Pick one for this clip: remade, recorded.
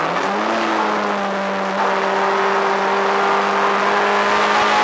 recorded